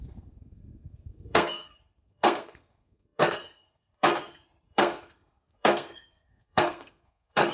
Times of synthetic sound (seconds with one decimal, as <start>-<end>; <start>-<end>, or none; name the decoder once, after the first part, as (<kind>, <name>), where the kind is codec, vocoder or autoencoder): 0.0-7.5 (codec, SNAC)